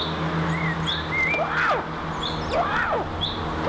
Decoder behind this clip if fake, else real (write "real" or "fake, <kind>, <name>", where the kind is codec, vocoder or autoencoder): real